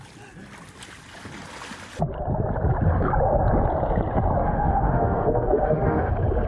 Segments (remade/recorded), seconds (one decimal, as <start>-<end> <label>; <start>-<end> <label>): 0.0-4.4 recorded; 4.4-6.1 remade; 6.1-6.5 recorded